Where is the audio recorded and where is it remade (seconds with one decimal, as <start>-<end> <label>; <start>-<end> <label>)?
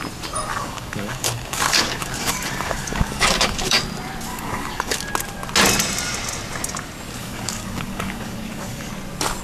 0.0-0.5 recorded; 0.5-3.8 remade; 3.8-4.3 recorded; 4.3-5.0 remade; 5.0-7.2 recorded; 7.2-8.9 remade; 8.9-9.4 recorded